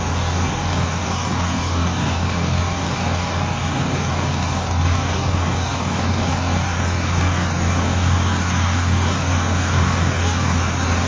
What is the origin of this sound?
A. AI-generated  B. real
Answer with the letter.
A